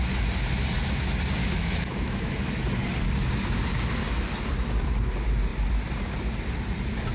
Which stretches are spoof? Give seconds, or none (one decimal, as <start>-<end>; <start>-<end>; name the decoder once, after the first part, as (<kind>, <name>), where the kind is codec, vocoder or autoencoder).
1.4-2.5 (autoencoder, DAC-VAE)